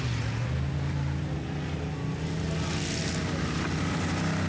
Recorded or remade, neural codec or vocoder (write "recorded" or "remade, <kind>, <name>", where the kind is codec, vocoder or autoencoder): recorded